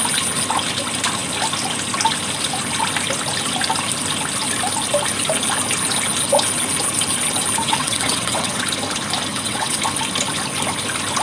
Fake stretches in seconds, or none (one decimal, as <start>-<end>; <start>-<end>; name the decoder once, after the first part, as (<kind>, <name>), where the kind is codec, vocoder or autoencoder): 7.6-8.6 (vocoder, WaveNeXt); 9.3-9.8